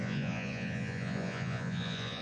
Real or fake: fake